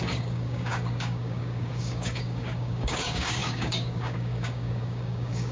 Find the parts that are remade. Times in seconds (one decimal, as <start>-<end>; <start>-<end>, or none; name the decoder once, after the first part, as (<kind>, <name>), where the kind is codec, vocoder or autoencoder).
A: 0.0-5.5 (codec, DAC)